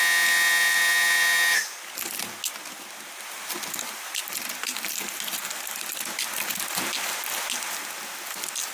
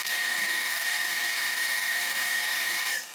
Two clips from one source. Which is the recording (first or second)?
first